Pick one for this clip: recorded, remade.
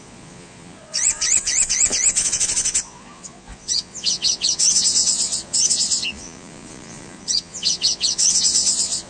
remade